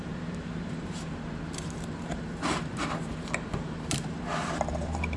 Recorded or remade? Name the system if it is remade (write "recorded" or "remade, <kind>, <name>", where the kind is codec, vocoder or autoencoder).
remade, vocoder, BigVGAN v2